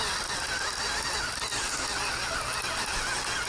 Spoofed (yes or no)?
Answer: no